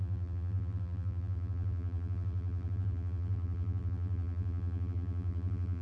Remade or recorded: remade